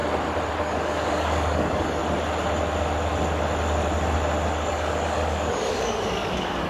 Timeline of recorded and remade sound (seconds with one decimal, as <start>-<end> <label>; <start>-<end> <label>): 0.0-0.6 recorded; 0.6-2.0 remade; 2.0-4.7 recorded; 4.7-6.7 remade